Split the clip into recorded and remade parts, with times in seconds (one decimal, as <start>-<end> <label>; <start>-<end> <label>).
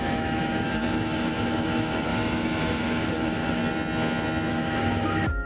0.0-3.6 remade; 3.6-4.5 recorded; 4.5-5.5 remade